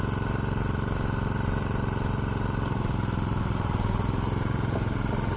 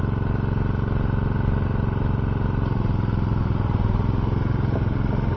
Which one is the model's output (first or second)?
first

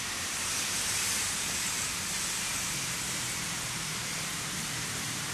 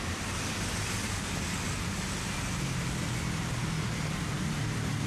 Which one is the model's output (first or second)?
first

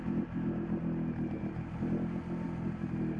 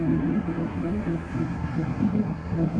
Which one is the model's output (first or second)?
second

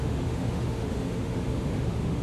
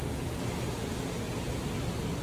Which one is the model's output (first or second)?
first